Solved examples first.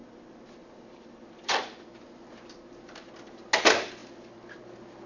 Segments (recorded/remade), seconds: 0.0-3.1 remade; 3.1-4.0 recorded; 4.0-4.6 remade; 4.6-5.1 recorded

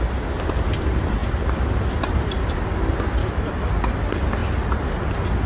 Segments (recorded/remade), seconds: 0.0-3.2 recorded; 3.2-3.7 remade; 3.7-5.5 recorded

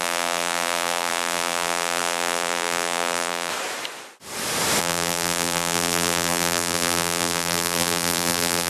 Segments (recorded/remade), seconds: 0.0-3.5 remade; 3.5-4.8 recorded; 4.8-8.7 remade